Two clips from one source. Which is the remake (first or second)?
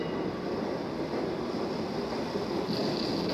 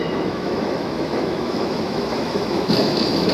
second